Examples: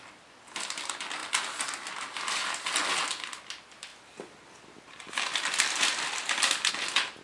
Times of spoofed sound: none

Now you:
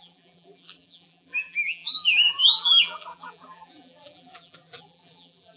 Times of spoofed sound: 0.0-5.6 (vocoder, BigVGAN v2)

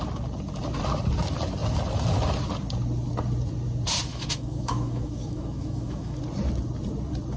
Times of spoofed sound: 4.1-6.2 (autoencoder, DAC-VAE)

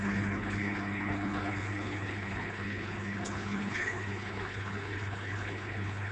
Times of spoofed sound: 0.0-6.1 (codec, HILCodec)

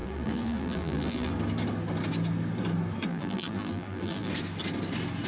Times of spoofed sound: 0.0-1.3 (vocoder, BigVGAN v2); 3.1-4.3

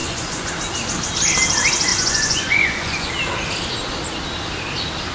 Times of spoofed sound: 0.0-0.5 (vocoder, Vocos); 1.9-3.1

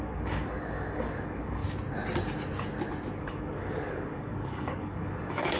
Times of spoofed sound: 0.0-1.6 (codec, DAC); 3.2-5.6

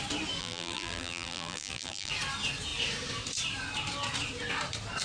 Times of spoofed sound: 0.4-2.1 (vocoder, BigVGAN v2)